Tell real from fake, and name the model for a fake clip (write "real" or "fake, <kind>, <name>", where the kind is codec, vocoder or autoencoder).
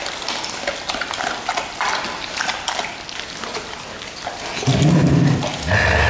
real